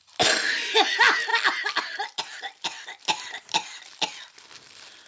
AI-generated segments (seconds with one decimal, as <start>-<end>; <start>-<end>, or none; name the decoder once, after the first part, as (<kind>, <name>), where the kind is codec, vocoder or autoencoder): 1.3-4.4 (vocoder, BigVGAN v2)